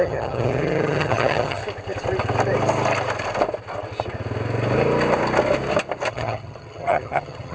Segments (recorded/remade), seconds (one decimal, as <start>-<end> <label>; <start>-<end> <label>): 0.0-1.6 remade; 1.6-6.1 recorded; 6.1-7.5 remade